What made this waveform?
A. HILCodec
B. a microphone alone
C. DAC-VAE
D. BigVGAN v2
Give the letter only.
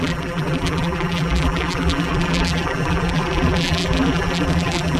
D